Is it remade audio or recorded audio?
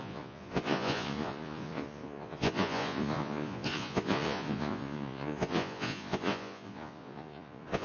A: remade